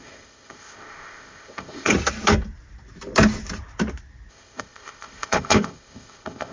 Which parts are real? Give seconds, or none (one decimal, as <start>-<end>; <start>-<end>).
1.9-4.3